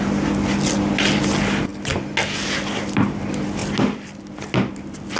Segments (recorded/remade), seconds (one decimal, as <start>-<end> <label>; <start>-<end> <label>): 0.0-5.2 recorded